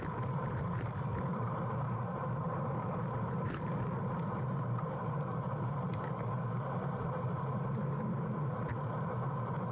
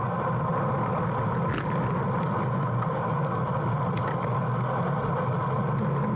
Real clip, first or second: second